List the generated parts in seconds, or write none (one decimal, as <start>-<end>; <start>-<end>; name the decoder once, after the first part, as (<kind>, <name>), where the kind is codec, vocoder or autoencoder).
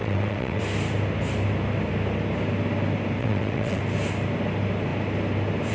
0.0-0.6 (vocoder, WaveNeXt); 3.2-3.8